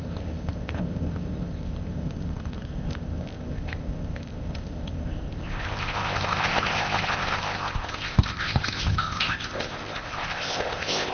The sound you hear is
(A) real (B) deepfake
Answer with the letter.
B